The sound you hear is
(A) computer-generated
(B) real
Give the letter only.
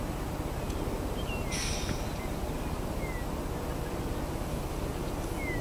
B